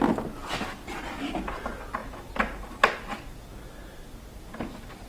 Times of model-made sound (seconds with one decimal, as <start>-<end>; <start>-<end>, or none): none

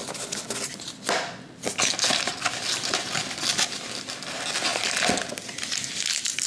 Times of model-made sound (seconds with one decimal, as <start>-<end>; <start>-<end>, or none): none

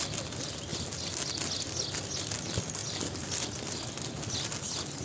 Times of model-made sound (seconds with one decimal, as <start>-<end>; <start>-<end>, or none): none

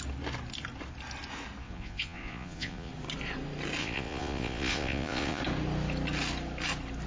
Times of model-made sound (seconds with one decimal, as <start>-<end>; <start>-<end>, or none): 1.6-2.9; 3.8-5.4

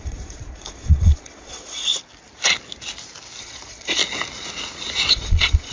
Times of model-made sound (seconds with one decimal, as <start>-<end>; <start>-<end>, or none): 0.0-1.9; 3.4-4.0; 5.1-5.7

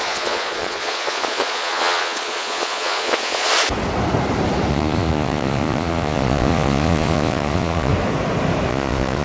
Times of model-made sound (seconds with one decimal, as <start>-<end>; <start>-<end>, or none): 0.0-3.5; 4.7-7.9; 8.7-9.2

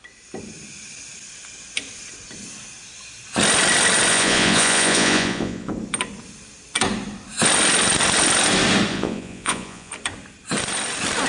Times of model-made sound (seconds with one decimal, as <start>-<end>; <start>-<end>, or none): 4.1-5.7; 8.9-9.9